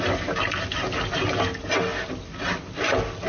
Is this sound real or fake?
real